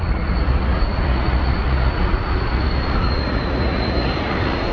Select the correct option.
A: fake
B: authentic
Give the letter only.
A